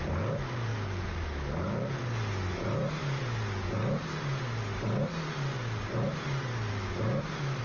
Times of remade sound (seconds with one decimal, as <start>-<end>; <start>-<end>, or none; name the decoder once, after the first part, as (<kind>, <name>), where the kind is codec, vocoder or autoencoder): 6.7-7.6 (autoencoder, DAC-VAE)